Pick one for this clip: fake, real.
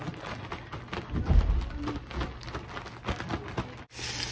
real